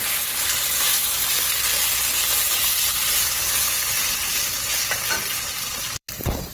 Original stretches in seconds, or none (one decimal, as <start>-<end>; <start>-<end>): 0.9-2.9; 4.3-5.7